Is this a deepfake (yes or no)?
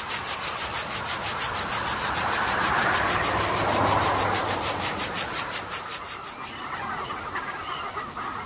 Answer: no